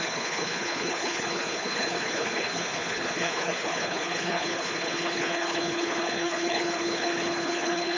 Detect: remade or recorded remade